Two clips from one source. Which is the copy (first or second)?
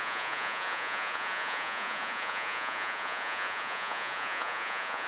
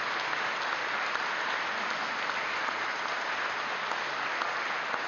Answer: first